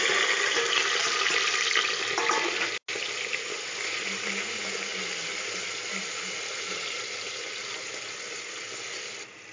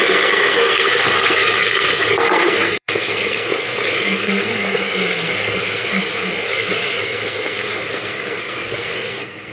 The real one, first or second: first